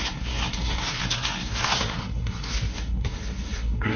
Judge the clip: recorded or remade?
remade